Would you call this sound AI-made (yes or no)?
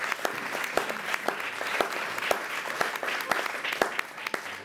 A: no